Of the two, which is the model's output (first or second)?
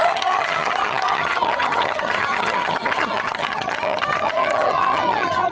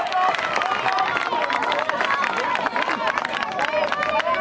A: first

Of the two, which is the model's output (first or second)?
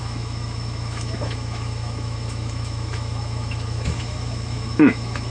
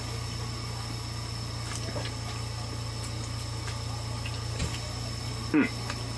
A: first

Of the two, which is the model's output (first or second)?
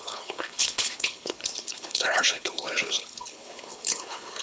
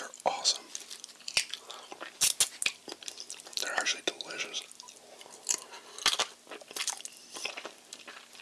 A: first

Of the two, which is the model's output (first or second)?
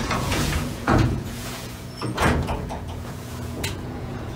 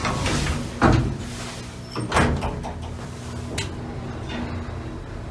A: first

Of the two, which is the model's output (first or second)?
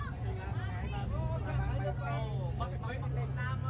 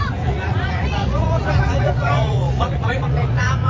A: second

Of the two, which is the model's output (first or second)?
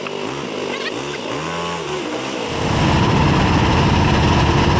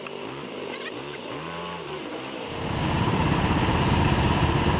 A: second